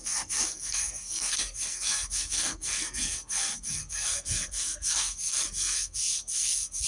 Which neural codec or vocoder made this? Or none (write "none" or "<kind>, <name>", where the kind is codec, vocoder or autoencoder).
codec, SNAC